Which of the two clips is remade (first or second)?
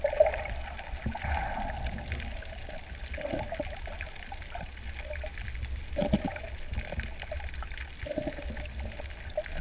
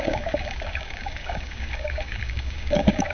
second